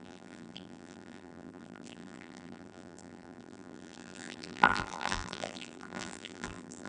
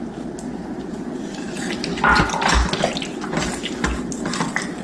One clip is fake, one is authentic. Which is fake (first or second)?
first